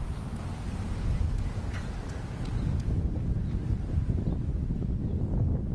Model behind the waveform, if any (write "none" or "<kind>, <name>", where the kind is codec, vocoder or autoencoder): none